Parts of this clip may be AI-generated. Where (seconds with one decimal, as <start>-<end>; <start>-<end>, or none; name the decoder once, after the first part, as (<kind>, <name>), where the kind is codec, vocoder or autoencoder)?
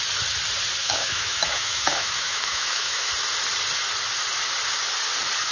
0.8-3.1 (autoencoder, DAC-VAE)